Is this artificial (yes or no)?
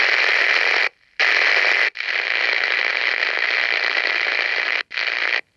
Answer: no